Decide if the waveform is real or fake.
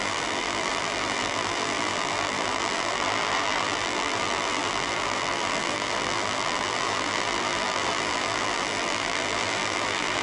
fake